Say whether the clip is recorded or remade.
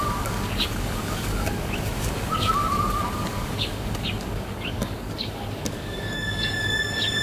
remade